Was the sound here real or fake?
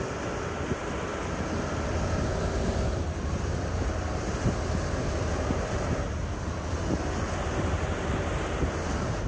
real